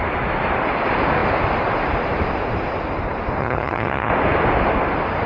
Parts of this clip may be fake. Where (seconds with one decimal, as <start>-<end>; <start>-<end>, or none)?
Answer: 3.4-4.1

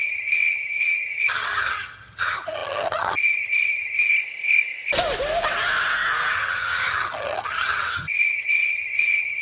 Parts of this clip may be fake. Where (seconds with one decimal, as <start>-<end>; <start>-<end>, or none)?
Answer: 0.0-4.1; 6.3-9.4

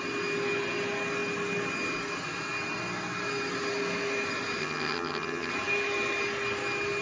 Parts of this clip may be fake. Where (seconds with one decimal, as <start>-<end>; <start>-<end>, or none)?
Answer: 4.6-5.5

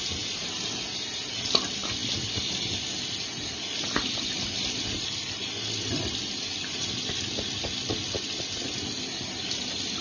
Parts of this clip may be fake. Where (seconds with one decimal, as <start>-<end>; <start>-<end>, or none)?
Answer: none

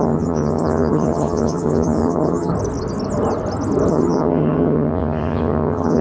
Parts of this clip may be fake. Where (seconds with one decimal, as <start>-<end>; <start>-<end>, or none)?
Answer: 0.0-2.5; 3.9-6.0

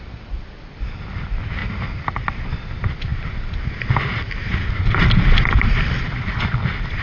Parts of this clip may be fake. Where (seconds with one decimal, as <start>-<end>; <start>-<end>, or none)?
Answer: none

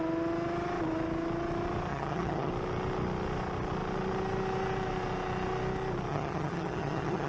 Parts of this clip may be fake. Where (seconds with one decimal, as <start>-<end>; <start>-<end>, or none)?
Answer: 1.9-2.5; 6.1-7.3